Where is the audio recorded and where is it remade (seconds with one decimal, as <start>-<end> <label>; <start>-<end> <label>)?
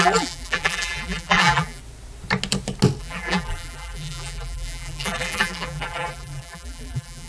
0.0-1.8 remade; 1.8-3.0 recorded; 3.0-7.3 remade